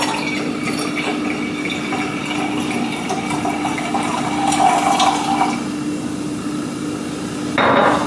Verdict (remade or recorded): recorded